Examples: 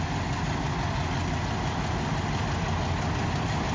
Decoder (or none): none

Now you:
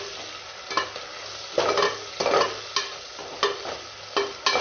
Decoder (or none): none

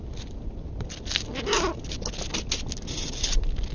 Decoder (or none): none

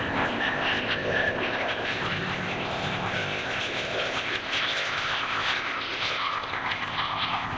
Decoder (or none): codec, ZipCodec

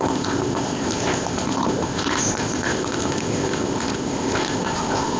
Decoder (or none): codec, ZipCodec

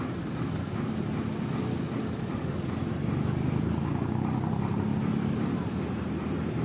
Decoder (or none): none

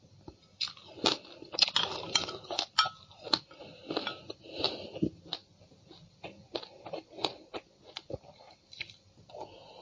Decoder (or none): none